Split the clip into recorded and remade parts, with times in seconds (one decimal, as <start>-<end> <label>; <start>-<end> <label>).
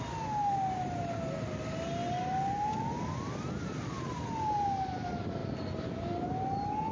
0.0-6.9 recorded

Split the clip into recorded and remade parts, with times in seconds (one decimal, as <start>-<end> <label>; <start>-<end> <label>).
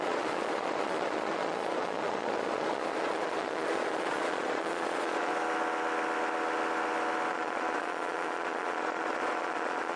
0.0-5.3 remade; 5.3-7.3 recorded; 7.3-10.0 remade